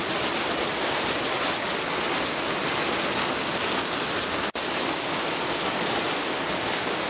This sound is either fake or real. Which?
real